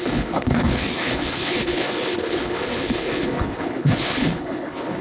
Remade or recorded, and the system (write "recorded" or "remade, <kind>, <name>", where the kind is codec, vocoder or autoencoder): remade, codec, HILCodec